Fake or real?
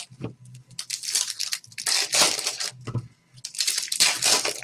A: real